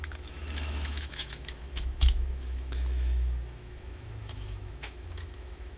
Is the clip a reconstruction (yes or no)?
yes